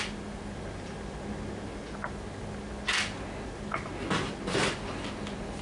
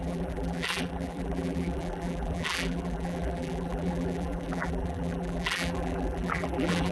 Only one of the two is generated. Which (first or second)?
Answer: second